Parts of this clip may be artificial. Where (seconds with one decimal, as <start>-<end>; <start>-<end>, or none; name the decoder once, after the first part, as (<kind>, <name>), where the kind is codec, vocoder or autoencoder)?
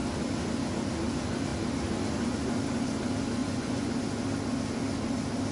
3.4-3.9 (vocoder, Vocos)